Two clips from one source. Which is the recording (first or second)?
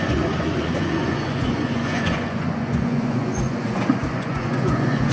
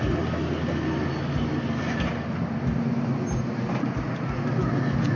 second